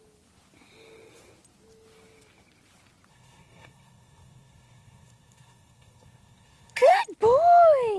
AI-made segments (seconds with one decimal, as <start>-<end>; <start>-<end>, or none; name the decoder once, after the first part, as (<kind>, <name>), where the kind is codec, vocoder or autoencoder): 3.1-7.0 (codec, SNAC)